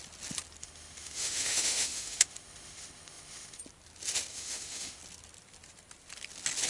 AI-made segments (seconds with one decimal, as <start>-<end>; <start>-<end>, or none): 0.6-3.6; 4.3-5.0